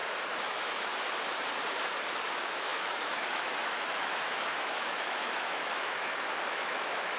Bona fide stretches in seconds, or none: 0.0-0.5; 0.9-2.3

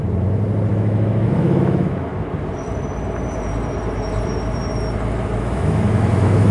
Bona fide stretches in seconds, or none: 0.0-0.7; 2.1-5.4

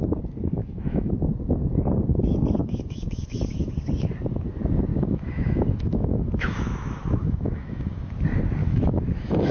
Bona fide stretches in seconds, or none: 0.0-0.6; 1.1-2.6; 3.7-4.9; 8.0-8.6

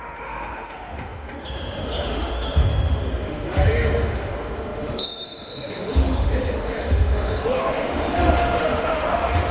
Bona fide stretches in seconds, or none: none

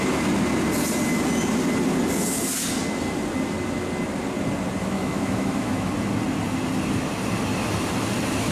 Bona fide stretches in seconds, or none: 0.0-4.8; 5.9-8.5

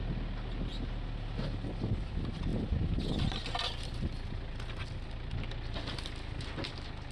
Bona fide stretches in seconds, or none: 0.0-7.1

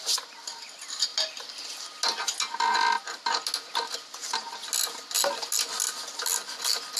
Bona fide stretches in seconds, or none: 0.0-7.0

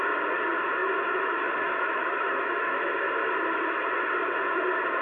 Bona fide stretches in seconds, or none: 0.0-0.8; 3.0-5.0